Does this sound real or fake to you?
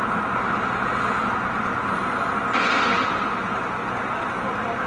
real